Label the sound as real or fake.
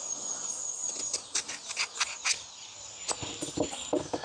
real